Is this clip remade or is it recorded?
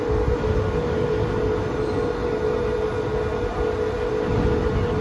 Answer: recorded